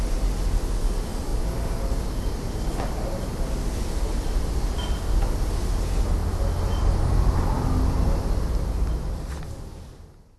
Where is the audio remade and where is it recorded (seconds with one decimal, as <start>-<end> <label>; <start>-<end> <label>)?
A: 0.0-10.4 recorded